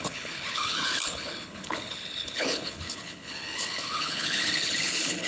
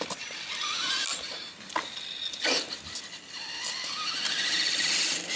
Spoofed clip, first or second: first